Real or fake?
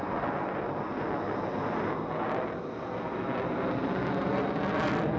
real